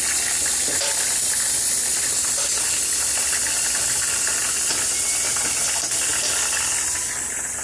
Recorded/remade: recorded